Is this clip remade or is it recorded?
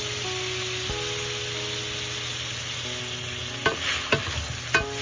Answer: recorded